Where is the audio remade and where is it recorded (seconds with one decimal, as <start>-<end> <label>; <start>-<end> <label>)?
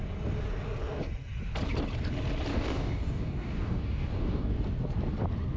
0.0-2.5 recorded; 2.5-4.6 remade; 4.6-5.6 recorded